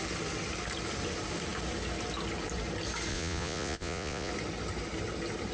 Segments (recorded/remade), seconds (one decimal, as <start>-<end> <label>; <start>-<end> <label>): 0.0-3.1 recorded; 3.1-4.3 remade; 4.3-5.5 recorded